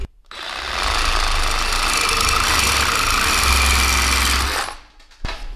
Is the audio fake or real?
real